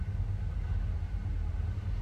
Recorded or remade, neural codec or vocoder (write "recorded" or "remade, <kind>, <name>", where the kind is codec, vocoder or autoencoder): recorded